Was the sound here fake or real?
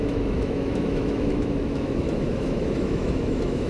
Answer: fake